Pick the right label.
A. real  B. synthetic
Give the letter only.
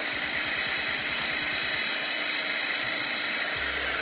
B